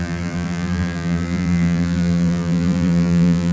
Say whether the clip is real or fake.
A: fake